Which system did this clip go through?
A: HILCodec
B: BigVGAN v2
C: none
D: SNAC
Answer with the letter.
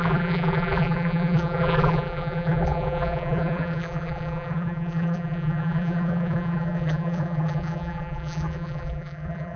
B